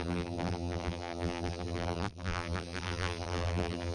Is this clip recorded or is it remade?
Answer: remade